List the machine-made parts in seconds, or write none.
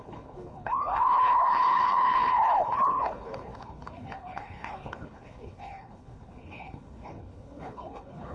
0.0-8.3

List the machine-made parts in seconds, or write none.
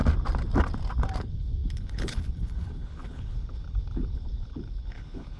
1.2-5.4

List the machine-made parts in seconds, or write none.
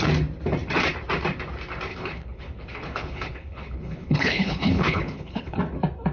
1.9-5.6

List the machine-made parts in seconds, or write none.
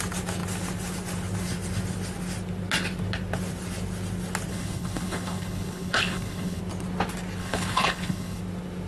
4.5-6.6; 7.4-8.4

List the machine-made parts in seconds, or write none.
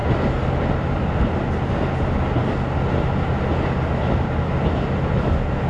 none